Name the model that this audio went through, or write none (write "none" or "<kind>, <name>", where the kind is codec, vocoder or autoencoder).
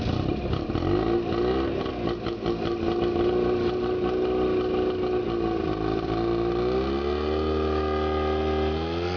none